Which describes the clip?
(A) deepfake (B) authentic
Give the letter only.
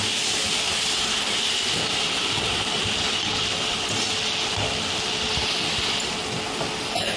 B